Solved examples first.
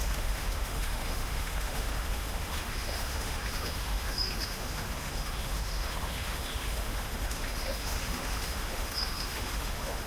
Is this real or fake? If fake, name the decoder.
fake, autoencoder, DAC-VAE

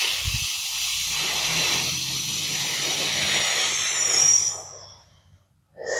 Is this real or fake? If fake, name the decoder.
real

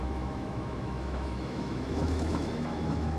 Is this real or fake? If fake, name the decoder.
fake, autoencoder, DAC-VAE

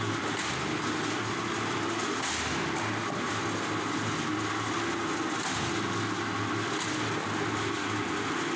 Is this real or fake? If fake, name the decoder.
real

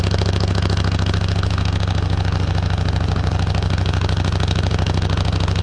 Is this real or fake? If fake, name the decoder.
fake, autoencoder, DAC-VAE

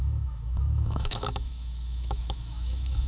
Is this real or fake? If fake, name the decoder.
fake, autoencoder, DAC-VAE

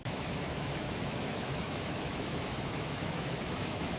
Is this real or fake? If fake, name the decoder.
fake, autoencoder, DAC-VAE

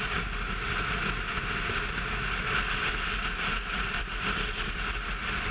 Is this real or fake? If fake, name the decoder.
real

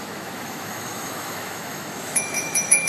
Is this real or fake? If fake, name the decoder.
fake, autoencoder, DAC-VAE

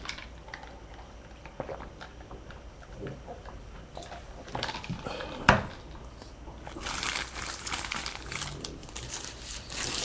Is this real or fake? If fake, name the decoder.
real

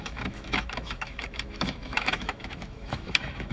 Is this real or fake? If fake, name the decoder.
fake, autoencoder, DAC-VAE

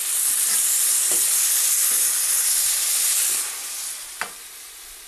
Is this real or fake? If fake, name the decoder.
real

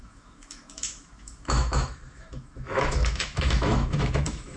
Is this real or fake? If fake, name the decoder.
fake, autoencoder, DAC-VAE